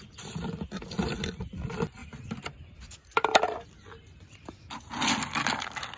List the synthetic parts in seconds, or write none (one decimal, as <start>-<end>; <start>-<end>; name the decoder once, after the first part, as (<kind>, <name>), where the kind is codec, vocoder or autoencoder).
none